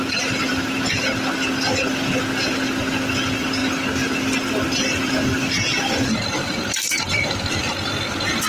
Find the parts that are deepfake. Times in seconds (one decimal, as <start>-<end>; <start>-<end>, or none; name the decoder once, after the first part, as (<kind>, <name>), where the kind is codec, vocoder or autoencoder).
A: none